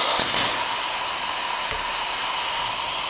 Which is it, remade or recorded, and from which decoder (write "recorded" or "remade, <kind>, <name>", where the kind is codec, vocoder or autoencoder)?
recorded